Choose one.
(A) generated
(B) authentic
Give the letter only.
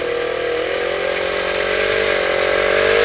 B